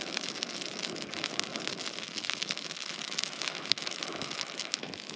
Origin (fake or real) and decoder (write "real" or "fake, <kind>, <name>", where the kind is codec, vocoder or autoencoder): fake, autoencoder, DAC-VAE